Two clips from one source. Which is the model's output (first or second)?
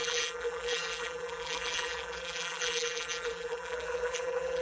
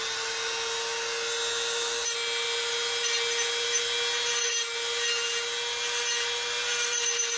first